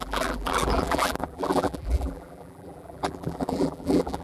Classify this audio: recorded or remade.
remade